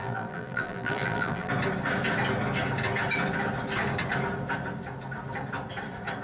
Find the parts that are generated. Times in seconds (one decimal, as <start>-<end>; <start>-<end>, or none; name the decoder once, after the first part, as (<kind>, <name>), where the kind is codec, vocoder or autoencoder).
0.0-1.5 (vocoder, BigVGAN v2)